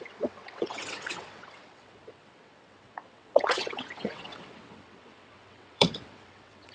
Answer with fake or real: fake